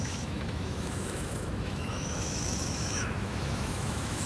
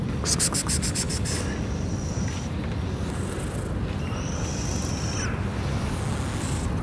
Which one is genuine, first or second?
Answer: second